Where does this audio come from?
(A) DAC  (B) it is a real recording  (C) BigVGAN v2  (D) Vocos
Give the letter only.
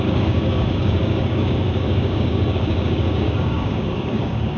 A